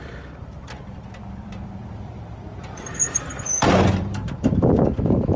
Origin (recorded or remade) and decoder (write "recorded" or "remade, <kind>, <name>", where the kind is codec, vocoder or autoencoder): remade, vocoder, BigVGAN v2